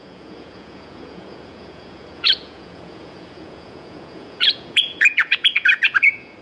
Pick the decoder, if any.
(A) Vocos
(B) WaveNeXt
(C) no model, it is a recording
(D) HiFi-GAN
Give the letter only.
A